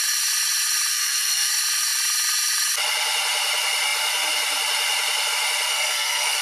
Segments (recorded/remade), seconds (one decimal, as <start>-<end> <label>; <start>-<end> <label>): 0.0-0.9 recorded; 0.9-1.5 remade; 1.5-5.7 recorded; 5.7-6.4 remade